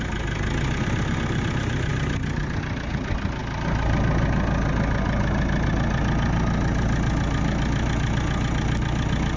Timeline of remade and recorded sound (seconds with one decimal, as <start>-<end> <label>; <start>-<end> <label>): 0.0-9.4 recorded